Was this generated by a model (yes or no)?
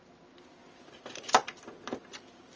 no